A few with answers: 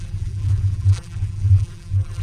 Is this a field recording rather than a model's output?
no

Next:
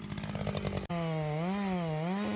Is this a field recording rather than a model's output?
yes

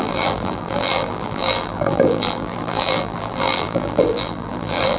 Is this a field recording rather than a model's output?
no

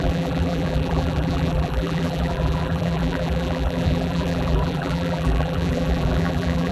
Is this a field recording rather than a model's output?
no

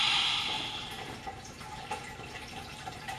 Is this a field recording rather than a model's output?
no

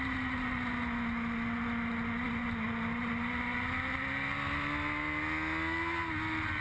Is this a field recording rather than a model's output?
yes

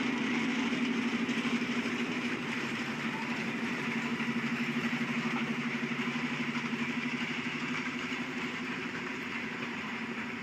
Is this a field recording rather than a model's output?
no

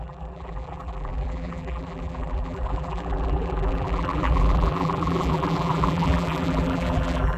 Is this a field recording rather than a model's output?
no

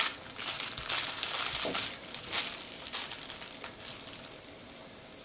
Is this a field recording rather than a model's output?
yes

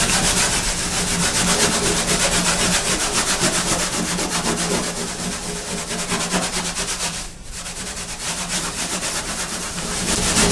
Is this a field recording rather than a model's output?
no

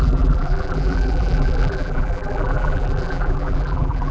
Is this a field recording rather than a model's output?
no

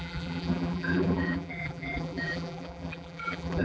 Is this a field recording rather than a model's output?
no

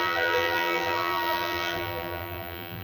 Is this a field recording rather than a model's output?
no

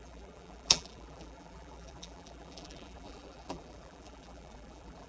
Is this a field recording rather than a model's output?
no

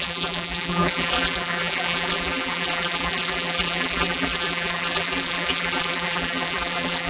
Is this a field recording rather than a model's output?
no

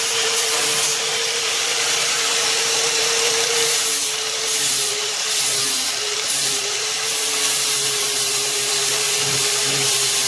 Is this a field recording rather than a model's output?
no